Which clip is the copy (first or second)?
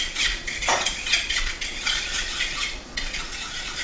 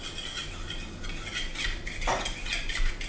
first